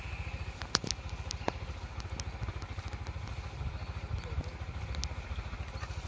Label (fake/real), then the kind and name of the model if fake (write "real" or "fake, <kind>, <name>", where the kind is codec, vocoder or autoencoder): real